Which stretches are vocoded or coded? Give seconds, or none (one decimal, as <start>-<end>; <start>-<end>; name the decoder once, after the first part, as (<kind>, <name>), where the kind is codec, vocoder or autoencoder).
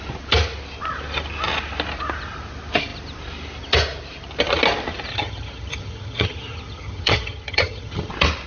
5.1-8.1 (vocoder, HiFi-GAN)